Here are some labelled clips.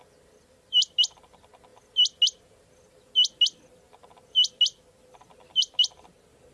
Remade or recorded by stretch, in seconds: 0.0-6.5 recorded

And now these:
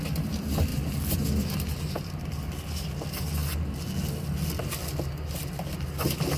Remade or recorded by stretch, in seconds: 0.0-6.4 recorded